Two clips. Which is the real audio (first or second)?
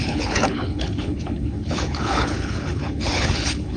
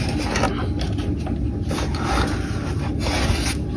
second